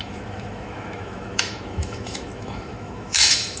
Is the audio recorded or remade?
remade